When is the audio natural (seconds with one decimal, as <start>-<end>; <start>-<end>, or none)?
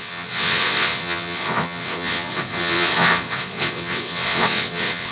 none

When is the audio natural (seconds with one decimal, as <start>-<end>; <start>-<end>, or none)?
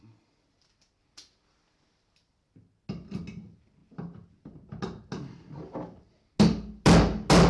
0.0-7.5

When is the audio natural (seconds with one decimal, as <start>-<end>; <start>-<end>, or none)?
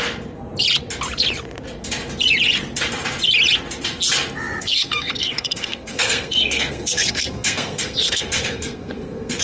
0.0-4.6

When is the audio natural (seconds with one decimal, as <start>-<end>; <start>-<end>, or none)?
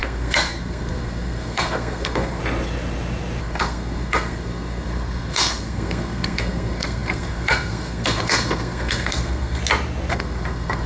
2.4-3.4; 9.6-10.1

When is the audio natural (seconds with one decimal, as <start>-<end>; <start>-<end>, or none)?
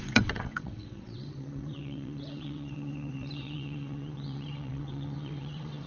none